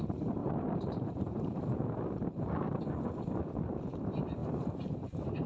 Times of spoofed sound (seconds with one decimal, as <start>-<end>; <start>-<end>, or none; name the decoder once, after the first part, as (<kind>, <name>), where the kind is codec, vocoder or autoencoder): 0.4-1.8 (vocoder, BigVGAN v2); 4.4-5.5